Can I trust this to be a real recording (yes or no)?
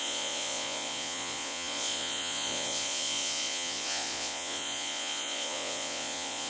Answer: no